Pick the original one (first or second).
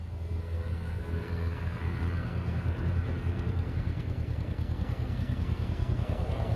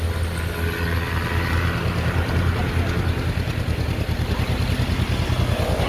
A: second